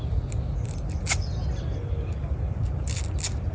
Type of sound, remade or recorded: recorded